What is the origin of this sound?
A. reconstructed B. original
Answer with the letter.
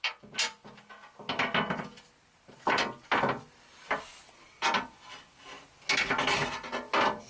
B